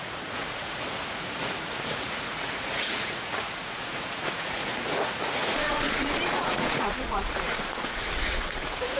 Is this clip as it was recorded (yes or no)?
no